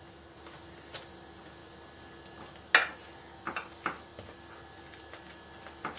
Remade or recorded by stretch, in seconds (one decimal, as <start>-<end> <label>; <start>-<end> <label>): 0.0-6.0 recorded